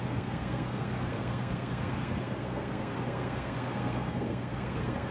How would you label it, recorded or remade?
remade